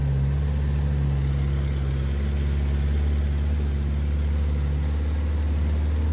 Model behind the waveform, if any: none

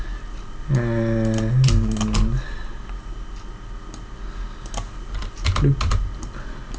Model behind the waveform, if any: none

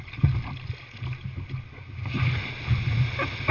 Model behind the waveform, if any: none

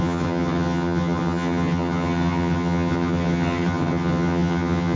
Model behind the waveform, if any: vocoder, HiFi-GAN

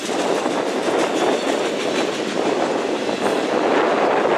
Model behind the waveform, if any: none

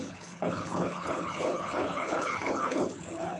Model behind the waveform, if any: codec, HILCodec